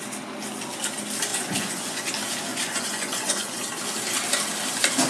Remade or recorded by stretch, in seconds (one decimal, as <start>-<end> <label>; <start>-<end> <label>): 0.0-1.3 recorded; 1.3-2.1 remade; 2.1-2.5 recorded; 2.5-3.6 remade; 3.6-5.1 recorded